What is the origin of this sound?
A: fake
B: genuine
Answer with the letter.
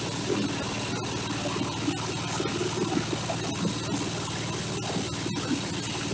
B